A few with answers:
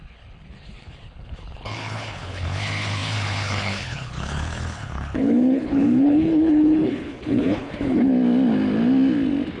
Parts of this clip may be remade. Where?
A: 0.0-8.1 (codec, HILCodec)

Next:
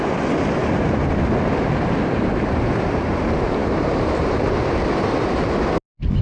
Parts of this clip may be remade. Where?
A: 3.6-4.5 (vocoder, BigVGAN v2)

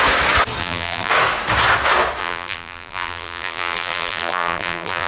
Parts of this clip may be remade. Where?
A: 0.6-1.1 (vocoder, BigVGAN v2); 2.2-5.1

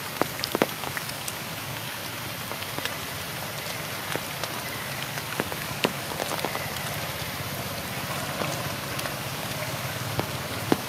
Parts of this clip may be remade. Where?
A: 0.0-2.0 (codec, DAC); 4.8-6.2; 9.1-10.9

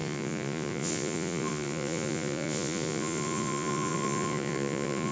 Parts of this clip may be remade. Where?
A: 0.0-5.1 (vocoder, Vocos)

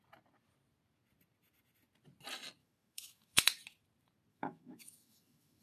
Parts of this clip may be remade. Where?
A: 2.6-3.4 (autoencoder, DAC-VAE); 4.3-5.6

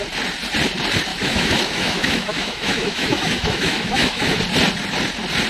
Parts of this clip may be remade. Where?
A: 1.1-4.4 (autoencoder, DAC-VAE)